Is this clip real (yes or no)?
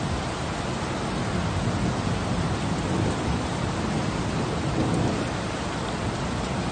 yes